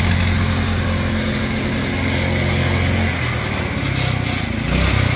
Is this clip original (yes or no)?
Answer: yes